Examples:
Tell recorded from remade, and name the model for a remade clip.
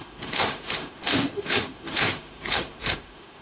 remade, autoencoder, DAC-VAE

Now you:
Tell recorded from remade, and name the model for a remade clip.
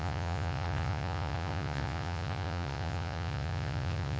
remade, vocoder, Vocos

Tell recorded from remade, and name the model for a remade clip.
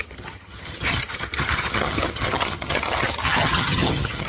remade, vocoder, HiFi-GAN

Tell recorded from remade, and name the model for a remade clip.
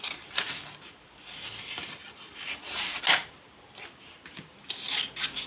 recorded